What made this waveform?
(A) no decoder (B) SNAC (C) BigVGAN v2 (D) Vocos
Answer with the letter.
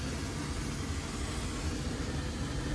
A